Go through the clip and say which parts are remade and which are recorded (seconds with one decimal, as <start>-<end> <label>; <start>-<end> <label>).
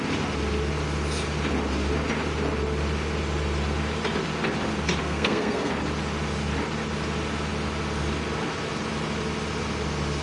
0.0-5.0 recorded; 5.0-5.7 remade; 5.7-10.2 recorded